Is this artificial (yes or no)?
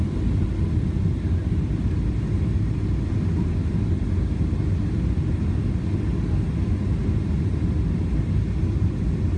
no